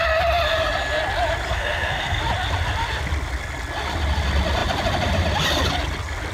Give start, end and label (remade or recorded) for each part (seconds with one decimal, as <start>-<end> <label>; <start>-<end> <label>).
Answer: 0.0-1.5 recorded; 1.5-2.2 remade; 2.2-6.3 recorded